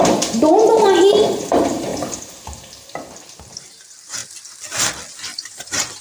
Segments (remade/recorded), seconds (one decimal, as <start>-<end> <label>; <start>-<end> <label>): 0.0-4.2 remade; 4.2-5.1 recorded; 5.1-6.0 remade